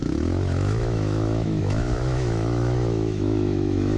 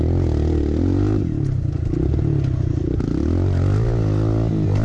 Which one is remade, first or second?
first